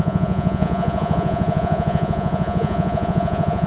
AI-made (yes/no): yes